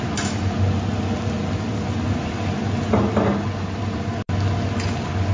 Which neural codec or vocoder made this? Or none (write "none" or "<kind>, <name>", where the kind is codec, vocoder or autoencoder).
none